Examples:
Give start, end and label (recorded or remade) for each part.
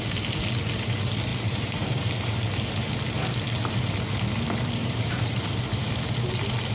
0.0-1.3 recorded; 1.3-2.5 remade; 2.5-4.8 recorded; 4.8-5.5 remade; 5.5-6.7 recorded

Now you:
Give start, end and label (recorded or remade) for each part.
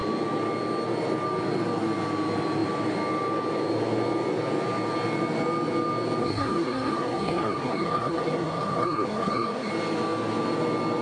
0.0-6.2 recorded; 6.2-9.7 remade; 9.7-11.0 recorded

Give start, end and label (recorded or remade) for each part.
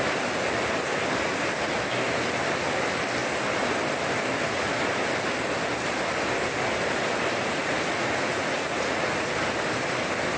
0.0-1.2 recorded; 1.2-1.8 remade; 1.8-7.4 recorded; 7.4-9.3 remade; 9.3-10.4 recorded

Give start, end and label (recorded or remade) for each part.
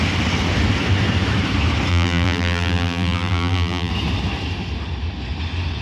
0.0-1.9 recorded; 1.9-3.9 remade; 3.9-5.8 recorded